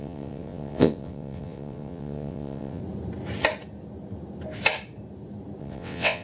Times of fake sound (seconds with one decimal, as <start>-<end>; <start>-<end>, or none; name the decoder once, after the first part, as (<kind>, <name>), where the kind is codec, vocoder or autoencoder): 0.0-2.8 (vocoder, WaveNeXt); 5.6-6.2